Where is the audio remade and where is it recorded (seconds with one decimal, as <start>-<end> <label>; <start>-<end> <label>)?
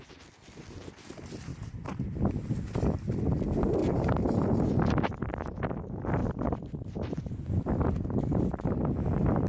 0.0-1.5 recorded; 1.5-2.2 remade; 2.2-3.8 recorded; 3.8-4.8 remade; 4.8-6.2 recorded; 6.2-7.3 remade; 7.3-9.5 recorded